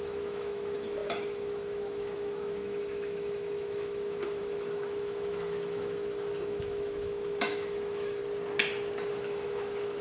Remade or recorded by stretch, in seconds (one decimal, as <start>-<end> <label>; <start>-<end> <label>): 0.0-8.2 remade; 8.2-9.1 recorded; 9.1-10.0 remade